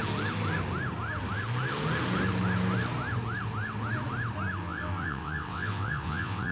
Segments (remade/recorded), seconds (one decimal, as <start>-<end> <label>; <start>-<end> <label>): 0.0-4.6 recorded; 4.6-6.5 remade